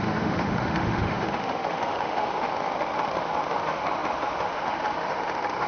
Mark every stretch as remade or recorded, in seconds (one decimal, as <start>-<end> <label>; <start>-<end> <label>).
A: 0.0-5.7 remade